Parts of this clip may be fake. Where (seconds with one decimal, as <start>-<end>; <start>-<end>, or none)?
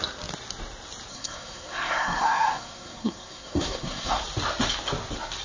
1.1-4.2